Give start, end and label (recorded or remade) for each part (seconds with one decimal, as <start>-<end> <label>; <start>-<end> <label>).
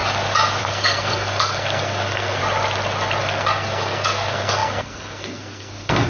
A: 0.0-0.6 recorded; 0.6-2.4 remade; 2.4-3.2 recorded; 3.2-6.1 remade